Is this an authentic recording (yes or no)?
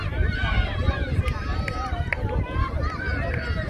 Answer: no